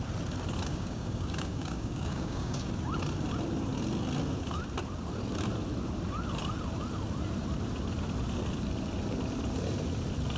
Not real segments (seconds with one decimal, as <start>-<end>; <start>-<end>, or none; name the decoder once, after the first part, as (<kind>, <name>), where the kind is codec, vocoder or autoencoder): 0.7-2.7 (codec, DAC)